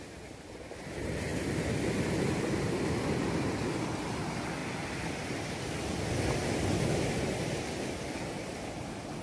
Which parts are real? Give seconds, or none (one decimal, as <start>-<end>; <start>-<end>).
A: 0.0-9.2